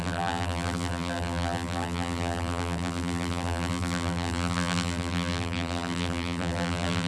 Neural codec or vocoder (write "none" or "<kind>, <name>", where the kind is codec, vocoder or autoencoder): vocoder, BigVGAN v2